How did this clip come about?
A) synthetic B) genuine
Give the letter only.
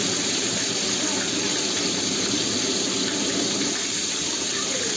A